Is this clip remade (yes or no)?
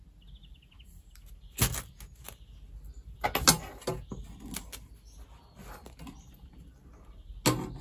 no